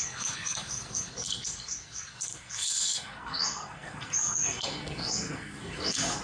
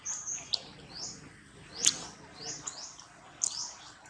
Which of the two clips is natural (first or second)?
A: second